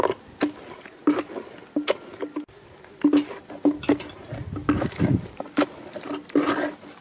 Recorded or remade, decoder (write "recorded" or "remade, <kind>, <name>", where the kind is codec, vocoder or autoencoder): recorded